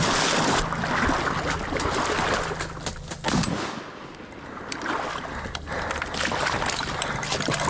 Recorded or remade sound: recorded